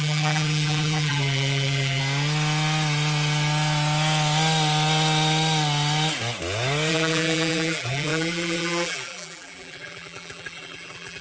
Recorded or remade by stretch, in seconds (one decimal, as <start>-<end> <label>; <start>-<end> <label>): 0.0-2.0 remade; 2.0-6.9 recorded; 6.9-11.2 remade